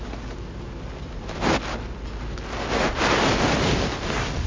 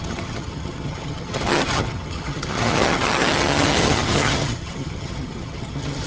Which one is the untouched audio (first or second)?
first